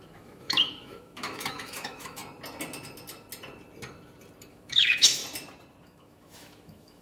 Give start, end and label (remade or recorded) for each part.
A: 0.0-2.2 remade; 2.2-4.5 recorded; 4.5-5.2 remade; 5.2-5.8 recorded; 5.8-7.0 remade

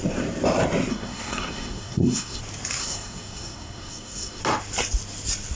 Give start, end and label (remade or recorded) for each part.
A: 0.0-0.9 recorded; 0.9-2.4 remade; 2.4-2.8 recorded; 2.8-4.4 remade; 4.4-5.5 recorded

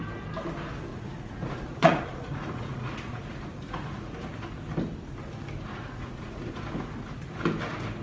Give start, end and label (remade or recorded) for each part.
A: 0.0-0.9 recorded; 0.9-4.3 remade; 4.3-5.7 recorded; 5.7-6.5 remade; 6.5-8.0 recorded

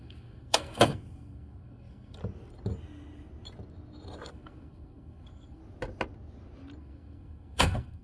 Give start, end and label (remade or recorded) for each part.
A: 0.0-2.2 remade; 2.2-4.3 recorded; 4.3-5.6 remade; 5.6-6.8 recorded; 6.8-8.0 remade

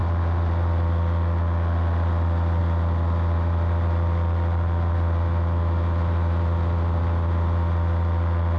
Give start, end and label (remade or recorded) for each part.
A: 0.0-8.6 recorded

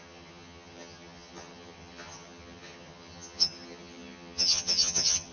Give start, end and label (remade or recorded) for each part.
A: 0.0-5.3 remade

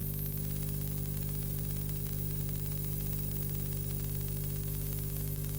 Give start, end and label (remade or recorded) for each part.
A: 0.0-5.6 recorded

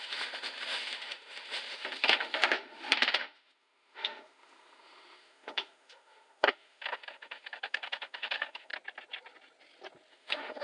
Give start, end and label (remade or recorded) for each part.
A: 0.0-8.7 remade; 8.7-10.1 recorded; 10.1-10.6 remade